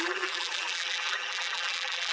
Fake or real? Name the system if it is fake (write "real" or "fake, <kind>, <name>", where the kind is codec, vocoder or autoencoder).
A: fake, vocoder, BigVGAN v2